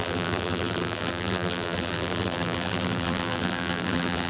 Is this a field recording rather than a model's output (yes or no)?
no